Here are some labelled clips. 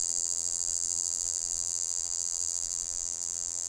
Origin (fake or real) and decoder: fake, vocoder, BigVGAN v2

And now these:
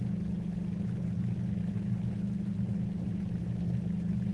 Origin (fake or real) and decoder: real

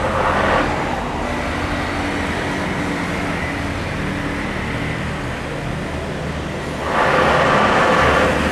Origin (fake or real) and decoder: real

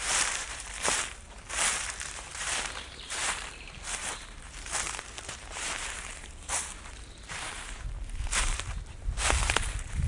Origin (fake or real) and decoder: fake, vocoder, BigVGAN v2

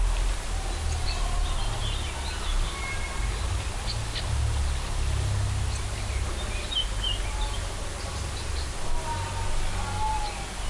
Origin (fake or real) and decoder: real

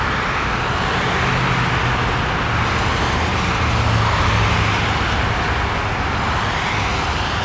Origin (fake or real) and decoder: real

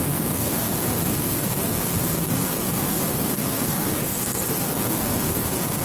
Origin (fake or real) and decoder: fake, codec, SNAC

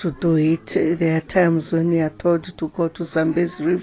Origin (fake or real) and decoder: real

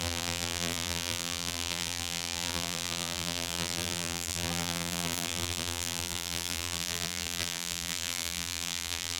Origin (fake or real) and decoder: fake, vocoder, BigVGAN v2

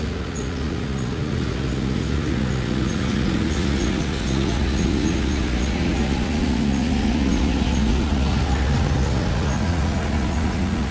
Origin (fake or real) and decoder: fake, vocoder, Vocos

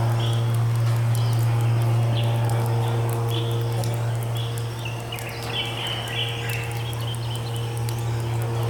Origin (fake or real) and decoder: real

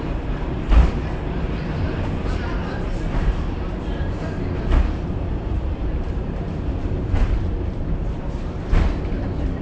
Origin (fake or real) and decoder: fake, vocoder, BigVGAN v2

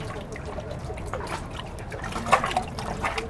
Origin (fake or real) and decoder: real